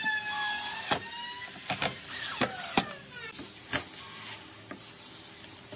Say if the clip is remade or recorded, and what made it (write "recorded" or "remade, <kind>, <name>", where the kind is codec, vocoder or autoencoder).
recorded